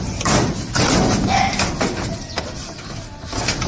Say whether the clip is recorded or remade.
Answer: recorded